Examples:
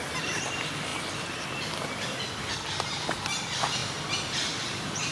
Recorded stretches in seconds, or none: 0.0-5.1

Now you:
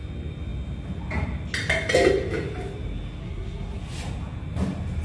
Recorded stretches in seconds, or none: 0.0-3.2; 3.8-5.0

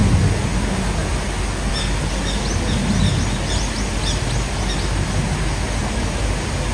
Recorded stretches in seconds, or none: 0.0-6.7

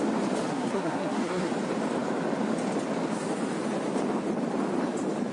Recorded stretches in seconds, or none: 0.0-0.5; 1.5-5.3